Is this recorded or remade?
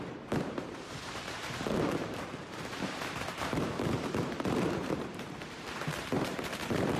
remade